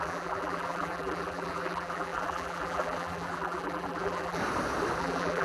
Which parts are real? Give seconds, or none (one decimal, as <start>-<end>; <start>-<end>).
4.4-5.0